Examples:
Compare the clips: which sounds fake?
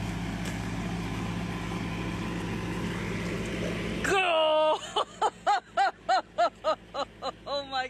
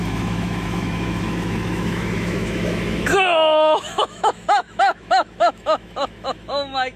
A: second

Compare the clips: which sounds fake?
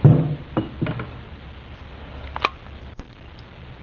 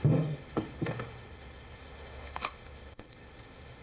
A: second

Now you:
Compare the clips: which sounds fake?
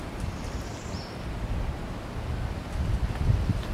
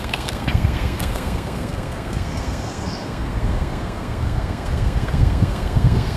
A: second